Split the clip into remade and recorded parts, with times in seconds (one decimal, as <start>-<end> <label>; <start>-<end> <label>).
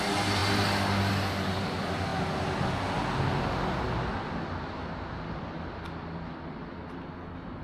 0.0-7.6 recorded